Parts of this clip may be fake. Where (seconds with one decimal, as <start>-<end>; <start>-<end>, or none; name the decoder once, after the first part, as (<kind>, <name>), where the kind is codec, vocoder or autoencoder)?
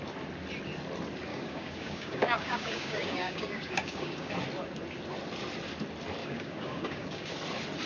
1.3-4.3 (codec, DAC); 6.2-7.3